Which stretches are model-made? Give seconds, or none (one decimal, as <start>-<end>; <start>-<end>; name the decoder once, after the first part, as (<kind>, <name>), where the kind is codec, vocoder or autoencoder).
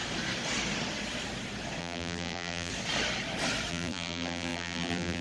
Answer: 1.8-2.7 (vocoder, BigVGAN v2); 3.7-5.2